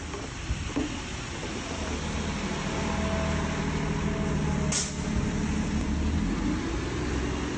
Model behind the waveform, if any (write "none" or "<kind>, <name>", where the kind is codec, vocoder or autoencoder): none